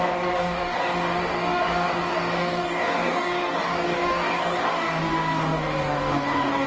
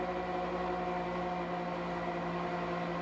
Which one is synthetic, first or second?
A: first